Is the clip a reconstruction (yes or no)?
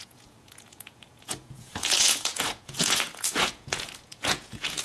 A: yes